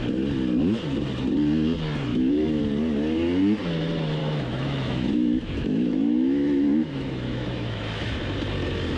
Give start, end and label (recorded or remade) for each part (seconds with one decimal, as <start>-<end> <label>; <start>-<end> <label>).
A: 0.0-2.1 recorded; 2.1-2.6 remade; 2.6-4.2 recorded; 4.2-8.2 remade; 8.2-9.0 recorded